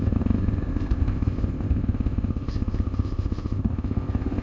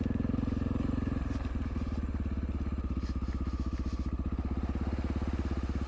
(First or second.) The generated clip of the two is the first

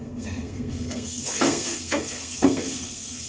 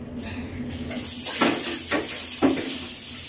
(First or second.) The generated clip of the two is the first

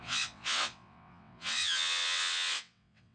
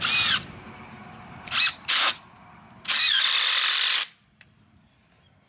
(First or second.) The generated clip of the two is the first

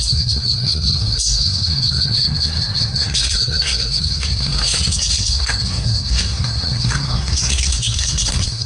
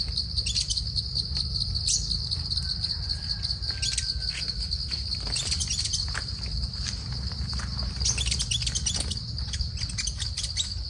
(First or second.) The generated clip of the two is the first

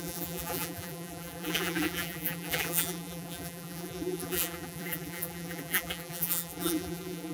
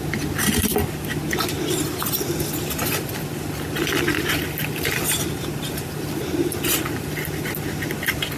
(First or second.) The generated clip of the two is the first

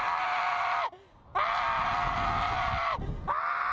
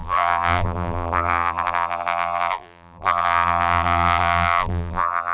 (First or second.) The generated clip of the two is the second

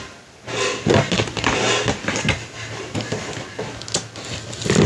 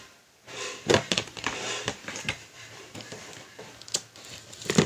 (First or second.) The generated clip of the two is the second